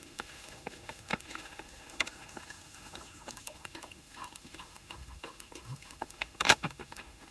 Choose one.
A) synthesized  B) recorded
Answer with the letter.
A